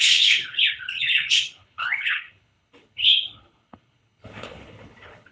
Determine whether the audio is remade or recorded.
remade